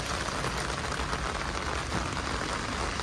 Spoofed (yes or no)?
no